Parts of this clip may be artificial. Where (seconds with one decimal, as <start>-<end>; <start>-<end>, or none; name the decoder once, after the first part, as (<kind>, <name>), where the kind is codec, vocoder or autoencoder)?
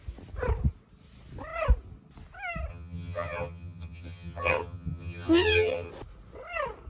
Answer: 2.7-5.9 (vocoder, HiFi-GAN)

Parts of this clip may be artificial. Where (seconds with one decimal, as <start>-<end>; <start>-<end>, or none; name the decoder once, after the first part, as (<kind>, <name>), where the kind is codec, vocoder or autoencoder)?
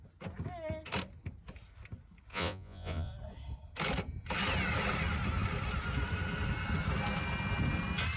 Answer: 2.3-3.1 (vocoder, Vocos)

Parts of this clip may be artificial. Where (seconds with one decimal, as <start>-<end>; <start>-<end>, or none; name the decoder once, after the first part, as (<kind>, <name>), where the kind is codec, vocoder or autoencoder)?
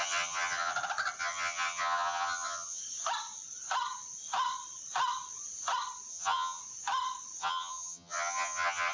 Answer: 0.0-0.7 (vocoder, HiFi-GAN); 1.2-2.8; 6.1-6.6; 7.4-8.9